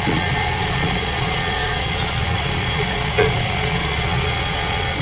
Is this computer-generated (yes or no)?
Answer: yes